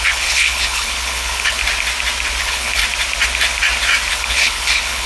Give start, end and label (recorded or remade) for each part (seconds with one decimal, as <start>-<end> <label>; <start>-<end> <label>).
0.0-1.6 remade; 1.6-2.4 recorded; 2.4-2.8 remade; 2.8-4.1 recorded; 4.1-5.1 remade